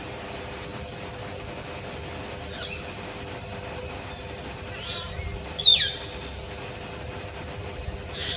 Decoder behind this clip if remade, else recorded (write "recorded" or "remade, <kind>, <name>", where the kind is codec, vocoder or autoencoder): remade, vocoder, BigVGAN v2